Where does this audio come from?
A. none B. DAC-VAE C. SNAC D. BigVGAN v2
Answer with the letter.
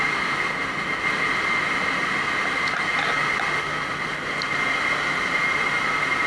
A